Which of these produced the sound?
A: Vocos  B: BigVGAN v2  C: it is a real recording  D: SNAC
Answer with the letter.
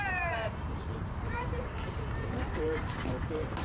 B